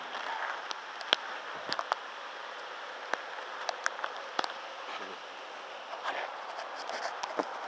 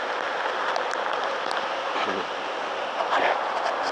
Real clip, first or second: second